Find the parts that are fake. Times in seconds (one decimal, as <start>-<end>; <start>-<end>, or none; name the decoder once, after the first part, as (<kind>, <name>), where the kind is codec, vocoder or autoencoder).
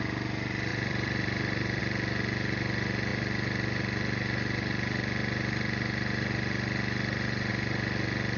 0.7-1.8 (vocoder, BigVGAN v2)